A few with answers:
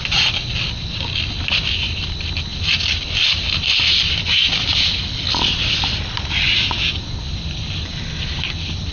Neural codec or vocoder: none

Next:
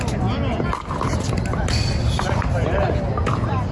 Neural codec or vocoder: none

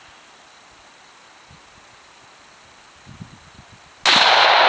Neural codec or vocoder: none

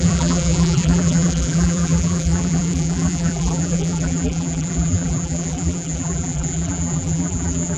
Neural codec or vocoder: vocoder, BigVGAN v2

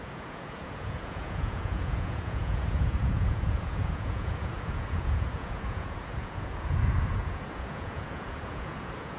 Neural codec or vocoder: vocoder, Vocos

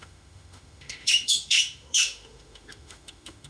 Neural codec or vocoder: autoencoder, DAC-VAE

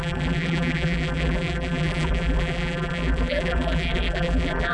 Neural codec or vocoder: vocoder, BigVGAN v2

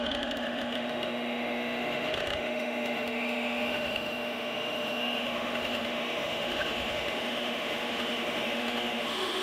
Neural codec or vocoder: autoencoder, DAC-VAE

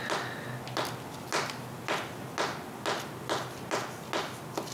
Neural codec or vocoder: none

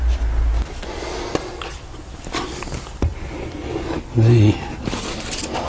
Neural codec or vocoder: none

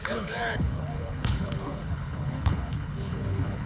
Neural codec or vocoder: codec, HILCodec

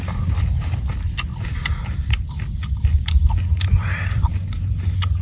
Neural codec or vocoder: none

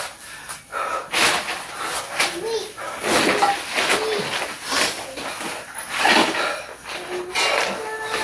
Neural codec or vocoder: none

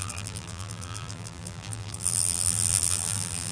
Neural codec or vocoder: vocoder, BigVGAN v2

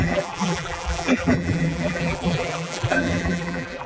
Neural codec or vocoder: vocoder, BigVGAN v2